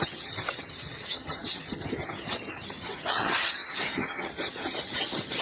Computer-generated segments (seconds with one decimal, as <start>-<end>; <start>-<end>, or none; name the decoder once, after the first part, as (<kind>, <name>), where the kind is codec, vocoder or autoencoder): 0.0-5.4 (vocoder, HiFi-GAN)